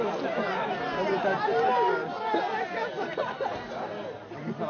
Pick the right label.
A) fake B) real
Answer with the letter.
B